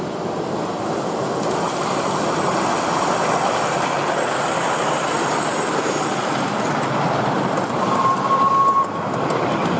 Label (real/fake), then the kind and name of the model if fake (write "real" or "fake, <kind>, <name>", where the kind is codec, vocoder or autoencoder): real